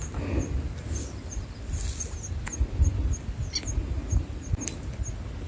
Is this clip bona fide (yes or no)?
yes